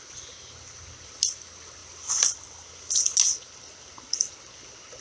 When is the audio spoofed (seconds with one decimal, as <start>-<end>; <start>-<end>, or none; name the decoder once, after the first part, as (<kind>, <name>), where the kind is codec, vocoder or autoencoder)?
none